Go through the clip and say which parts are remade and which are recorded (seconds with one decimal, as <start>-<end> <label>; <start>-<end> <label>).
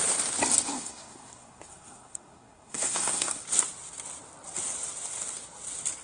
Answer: 0.0-0.7 recorded; 0.7-3.4 remade; 3.4-6.0 recorded